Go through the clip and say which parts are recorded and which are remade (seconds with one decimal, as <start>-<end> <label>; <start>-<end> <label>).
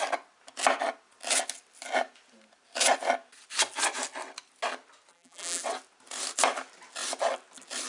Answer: 0.0-5.1 recorded; 5.1-5.6 remade; 5.6-7.9 recorded